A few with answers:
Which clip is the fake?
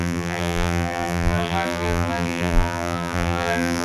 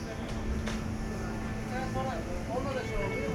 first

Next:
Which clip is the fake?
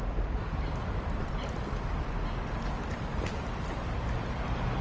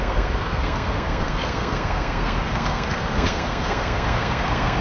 second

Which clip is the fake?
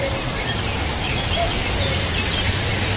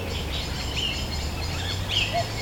first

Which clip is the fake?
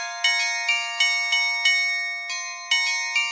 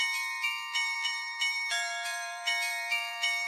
second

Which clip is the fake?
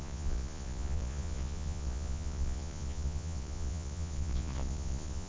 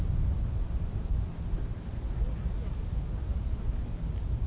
first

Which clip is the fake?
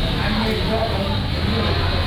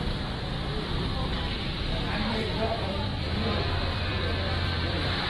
second